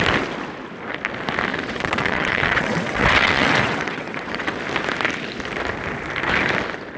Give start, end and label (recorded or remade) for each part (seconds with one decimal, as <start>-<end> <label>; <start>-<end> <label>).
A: 0.0-1.5 recorded; 1.5-4.6 remade; 4.6-7.0 recorded